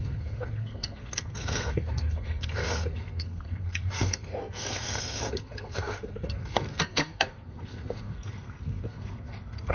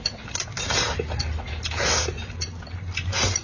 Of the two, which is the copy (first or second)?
first